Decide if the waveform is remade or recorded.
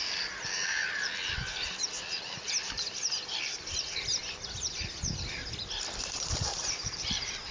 remade